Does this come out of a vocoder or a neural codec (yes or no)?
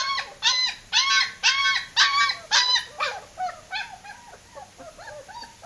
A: no